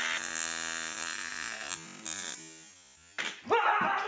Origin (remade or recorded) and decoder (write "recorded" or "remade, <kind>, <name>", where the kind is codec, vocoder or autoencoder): recorded